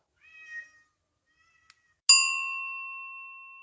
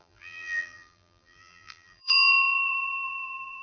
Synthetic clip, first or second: second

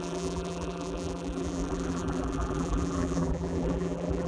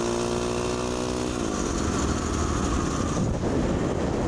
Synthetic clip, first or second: first